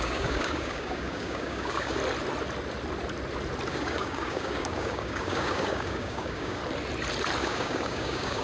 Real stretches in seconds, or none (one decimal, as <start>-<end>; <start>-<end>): 2.0-3.7; 6.6-7.4